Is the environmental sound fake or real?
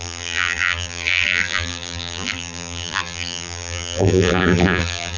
fake